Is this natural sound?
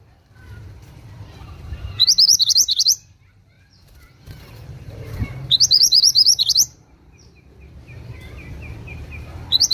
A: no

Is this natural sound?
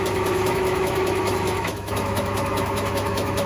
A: no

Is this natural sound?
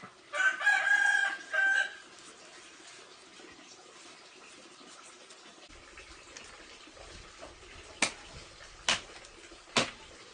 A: yes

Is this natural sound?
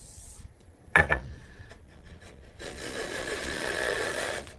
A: no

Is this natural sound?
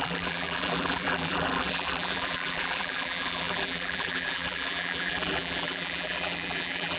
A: no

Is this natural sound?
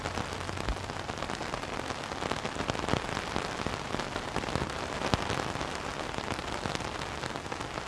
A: yes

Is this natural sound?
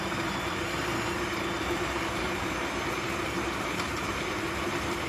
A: no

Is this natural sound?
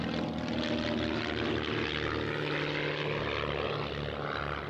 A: yes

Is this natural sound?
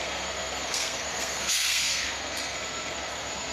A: no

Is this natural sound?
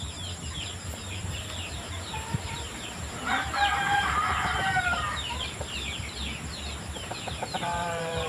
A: no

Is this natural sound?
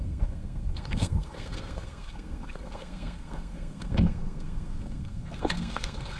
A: no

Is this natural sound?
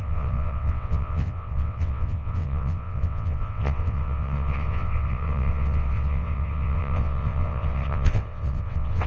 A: no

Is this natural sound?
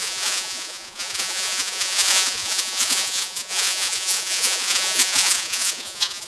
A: no